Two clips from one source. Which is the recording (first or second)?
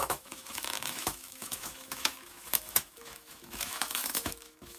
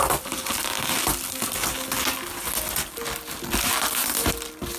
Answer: second